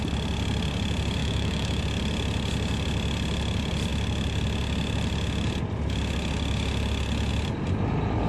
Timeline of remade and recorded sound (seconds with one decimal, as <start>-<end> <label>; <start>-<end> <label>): 0.0-1.2 recorded; 1.2-1.8 remade; 1.8-8.3 recorded